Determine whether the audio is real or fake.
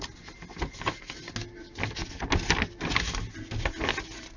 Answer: real